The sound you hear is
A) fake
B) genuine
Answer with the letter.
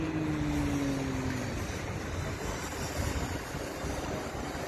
B